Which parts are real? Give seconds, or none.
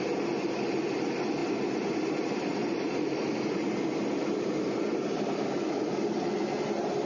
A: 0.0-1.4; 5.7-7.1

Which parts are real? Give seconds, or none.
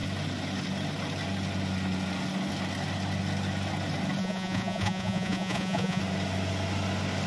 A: 0.0-4.2; 6.0-7.3